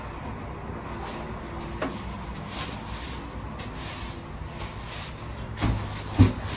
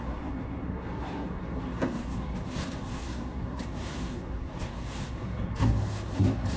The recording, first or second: first